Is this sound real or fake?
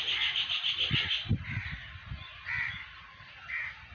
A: real